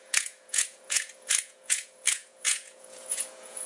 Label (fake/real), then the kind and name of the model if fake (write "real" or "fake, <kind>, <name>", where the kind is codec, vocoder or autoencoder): fake, vocoder, Vocos